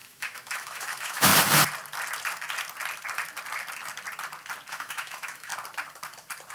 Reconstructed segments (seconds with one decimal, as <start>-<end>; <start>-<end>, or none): 0.0-1.3; 4.7-5.5